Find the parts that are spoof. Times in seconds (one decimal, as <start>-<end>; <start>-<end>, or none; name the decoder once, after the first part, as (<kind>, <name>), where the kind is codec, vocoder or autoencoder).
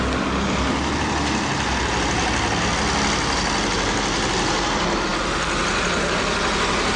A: none